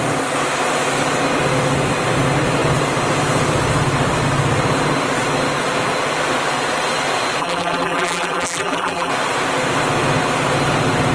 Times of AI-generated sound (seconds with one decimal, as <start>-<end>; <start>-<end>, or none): 7.4-9.1